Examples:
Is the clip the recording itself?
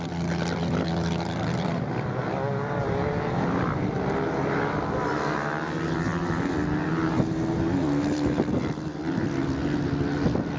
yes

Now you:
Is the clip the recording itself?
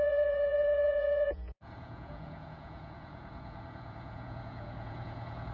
no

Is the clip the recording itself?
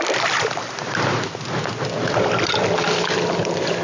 yes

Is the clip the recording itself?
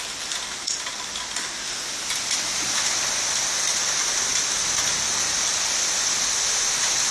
no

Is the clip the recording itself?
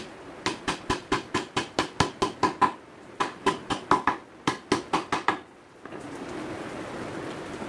yes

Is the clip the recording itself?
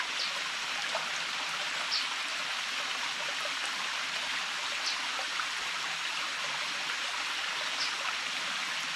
yes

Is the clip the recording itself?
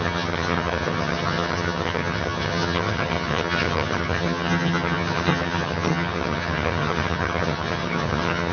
no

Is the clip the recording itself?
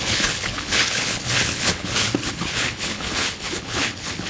no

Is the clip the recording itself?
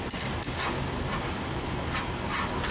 yes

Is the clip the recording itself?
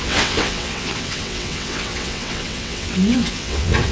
no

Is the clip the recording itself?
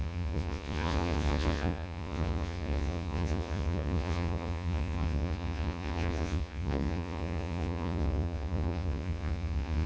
no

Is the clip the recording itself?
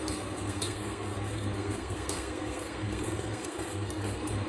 no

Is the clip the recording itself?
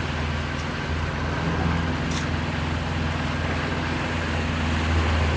yes